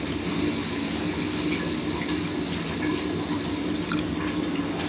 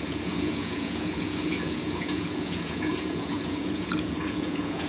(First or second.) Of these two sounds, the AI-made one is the second